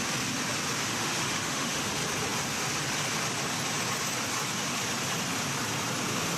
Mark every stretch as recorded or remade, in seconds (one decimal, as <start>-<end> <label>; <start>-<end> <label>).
0.0-0.8 recorded; 0.8-1.9 remade; 1.9-6.4 recorded

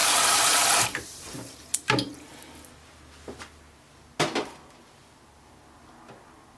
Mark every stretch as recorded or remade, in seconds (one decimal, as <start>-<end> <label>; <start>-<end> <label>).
0.0-1.6 remade; 1.6-6.6 recorded